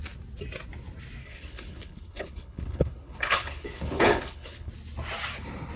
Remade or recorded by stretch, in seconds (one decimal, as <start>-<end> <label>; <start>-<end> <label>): 0.0-1.2 recorded; 1.2-4.7 remade; 4.7-5.8 recorded